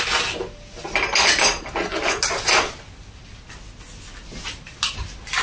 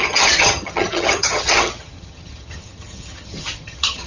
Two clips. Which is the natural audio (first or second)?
first